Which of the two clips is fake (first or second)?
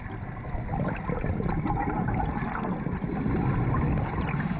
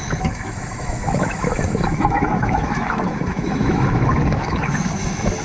second